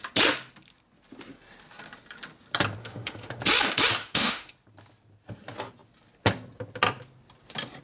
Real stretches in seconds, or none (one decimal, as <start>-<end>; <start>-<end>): 0.0-2.8; 3.4-4.0; 4.5-7.8

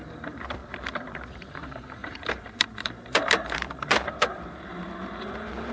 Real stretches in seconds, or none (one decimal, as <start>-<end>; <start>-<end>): 0.6-1.3

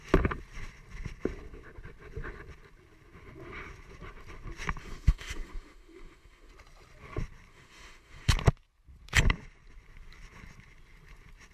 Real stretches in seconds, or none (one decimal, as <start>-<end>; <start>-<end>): 0.0-4.8; 6.5-7.5; 8.3-11.5

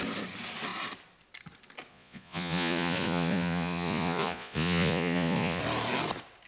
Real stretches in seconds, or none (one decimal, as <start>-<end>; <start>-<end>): 0.0-1.9; 5.6-6.5

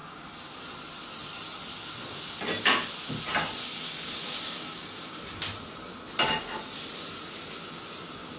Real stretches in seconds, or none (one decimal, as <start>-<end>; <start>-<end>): 0.5-3.6; 5.2-8.4

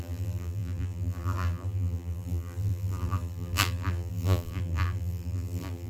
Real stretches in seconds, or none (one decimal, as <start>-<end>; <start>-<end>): none

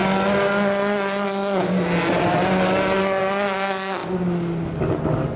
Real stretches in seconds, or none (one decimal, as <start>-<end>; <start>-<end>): 0.0-5.4